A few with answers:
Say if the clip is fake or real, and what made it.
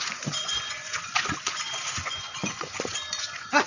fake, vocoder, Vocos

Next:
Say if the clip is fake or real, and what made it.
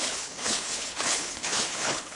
fake, codec, HILCodec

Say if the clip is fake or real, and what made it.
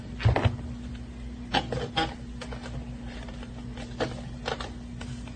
real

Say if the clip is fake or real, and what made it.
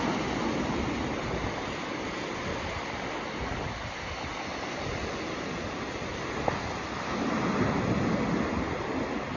real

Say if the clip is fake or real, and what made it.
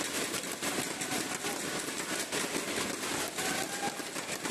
real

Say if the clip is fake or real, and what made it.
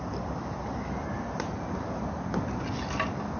real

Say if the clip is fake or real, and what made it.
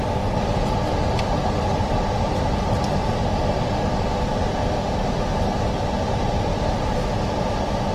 real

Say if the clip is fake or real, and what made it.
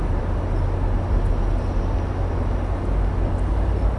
real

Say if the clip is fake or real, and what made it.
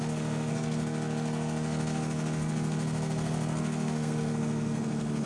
fake, codec, SNAC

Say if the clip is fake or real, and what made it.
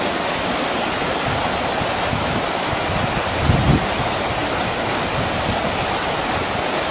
real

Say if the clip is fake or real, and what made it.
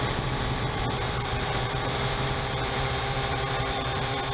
fake, vocoder, BigVGAN v2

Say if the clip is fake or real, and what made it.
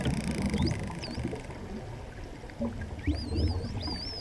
real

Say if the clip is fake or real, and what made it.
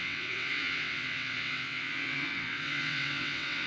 fake, vocoder, WaveNeXt